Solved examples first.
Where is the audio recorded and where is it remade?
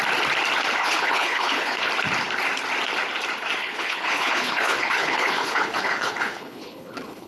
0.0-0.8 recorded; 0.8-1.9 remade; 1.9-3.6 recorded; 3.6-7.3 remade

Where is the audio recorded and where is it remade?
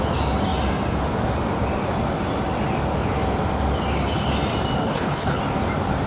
0.0-4.8 recorded; 4.8-5.4 remade; 5.4-6.1 recorded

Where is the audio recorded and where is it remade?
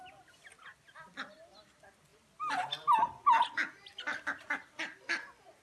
0.0-5.6 recorded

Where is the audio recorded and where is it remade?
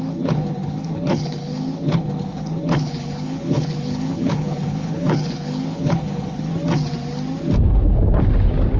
0.0-6.5 remade; 6.5-8.8 recorded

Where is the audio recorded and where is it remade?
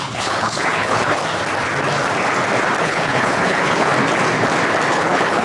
0.0-1.2 remade; 1.2-2.8 recorded; 2.8-3.9 remade; 3.9-4.9 recorded; 4.9-5.4 remade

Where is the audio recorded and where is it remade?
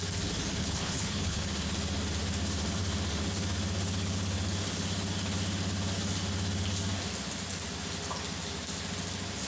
0.0-0.6 recorded; 0.6-1.4 remade; 1.4-9.5 recorded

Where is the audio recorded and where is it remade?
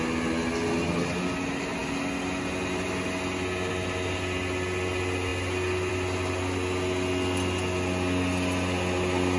0.0-9.4 recorded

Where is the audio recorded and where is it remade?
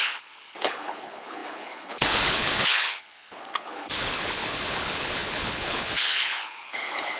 0.0-7.2 remade